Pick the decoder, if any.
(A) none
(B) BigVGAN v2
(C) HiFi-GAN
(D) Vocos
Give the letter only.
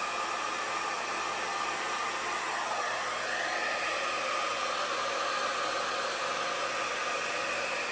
A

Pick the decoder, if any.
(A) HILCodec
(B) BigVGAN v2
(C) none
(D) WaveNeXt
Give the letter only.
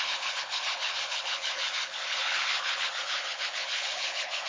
A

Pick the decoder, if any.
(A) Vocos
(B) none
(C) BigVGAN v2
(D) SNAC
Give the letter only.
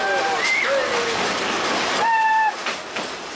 B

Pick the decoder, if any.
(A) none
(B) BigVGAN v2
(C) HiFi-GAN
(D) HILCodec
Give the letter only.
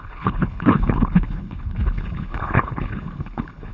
D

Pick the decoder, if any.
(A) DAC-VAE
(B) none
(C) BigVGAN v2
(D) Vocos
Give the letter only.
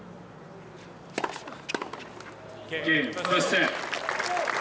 B